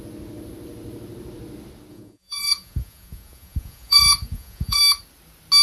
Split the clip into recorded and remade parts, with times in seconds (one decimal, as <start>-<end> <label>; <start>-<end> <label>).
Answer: 0.0-1.9 recorded; 1.9-4.8 remade; 4.8-5.6 recorded